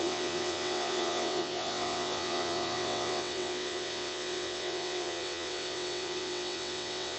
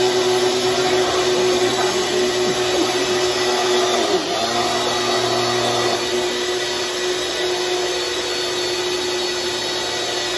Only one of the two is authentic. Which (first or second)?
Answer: second